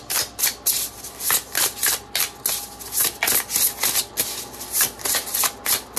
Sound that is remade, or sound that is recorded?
recorded